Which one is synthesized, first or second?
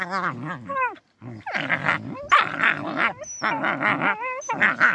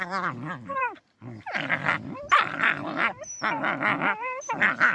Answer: second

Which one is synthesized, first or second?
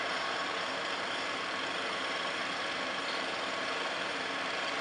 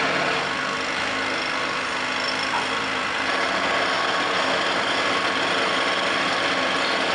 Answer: first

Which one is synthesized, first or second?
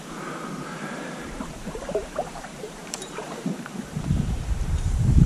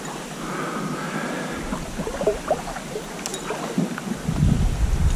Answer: first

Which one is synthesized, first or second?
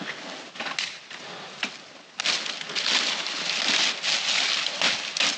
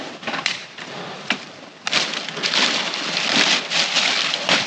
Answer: second